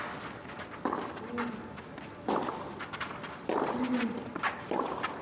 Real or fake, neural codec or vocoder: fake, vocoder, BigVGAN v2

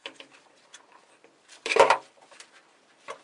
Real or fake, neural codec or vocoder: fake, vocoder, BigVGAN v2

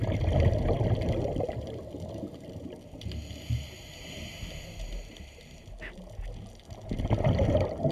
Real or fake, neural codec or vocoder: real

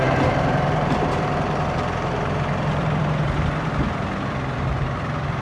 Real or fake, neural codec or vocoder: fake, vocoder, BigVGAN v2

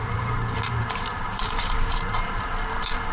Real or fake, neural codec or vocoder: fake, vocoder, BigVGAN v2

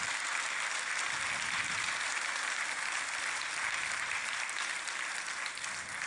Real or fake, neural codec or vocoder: real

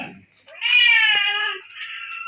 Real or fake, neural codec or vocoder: fake, vocoder, BigVGAN v2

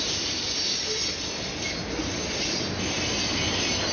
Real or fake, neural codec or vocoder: real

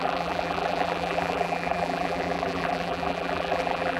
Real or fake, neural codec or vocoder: fake, vocoder, BigVGAN v2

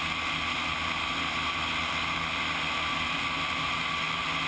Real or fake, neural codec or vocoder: real